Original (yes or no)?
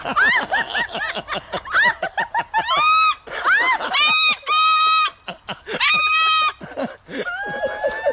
yes